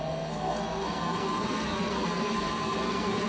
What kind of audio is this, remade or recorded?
remade